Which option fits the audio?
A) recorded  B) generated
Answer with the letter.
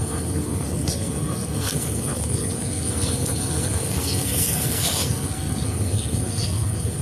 B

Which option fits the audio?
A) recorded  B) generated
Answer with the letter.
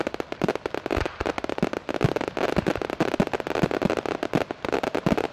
A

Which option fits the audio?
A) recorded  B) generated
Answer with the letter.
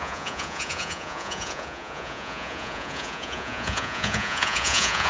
B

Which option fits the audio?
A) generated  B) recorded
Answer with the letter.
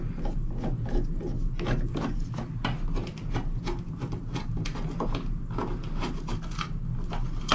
B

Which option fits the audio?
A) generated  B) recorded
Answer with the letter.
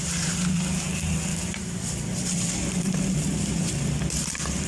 A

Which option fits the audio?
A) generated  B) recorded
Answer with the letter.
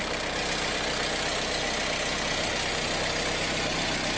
B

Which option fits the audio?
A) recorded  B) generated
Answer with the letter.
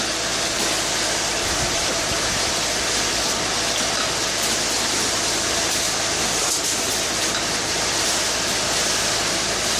A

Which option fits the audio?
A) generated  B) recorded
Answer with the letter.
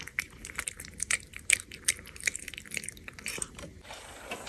A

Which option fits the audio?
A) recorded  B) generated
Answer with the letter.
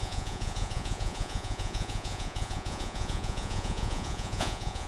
B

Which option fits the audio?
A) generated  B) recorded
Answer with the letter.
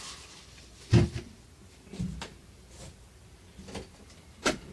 B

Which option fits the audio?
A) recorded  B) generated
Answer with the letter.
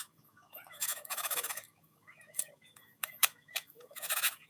B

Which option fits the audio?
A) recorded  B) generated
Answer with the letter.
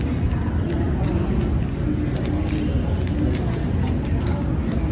A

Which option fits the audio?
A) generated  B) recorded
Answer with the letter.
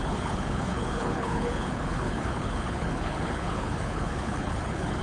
A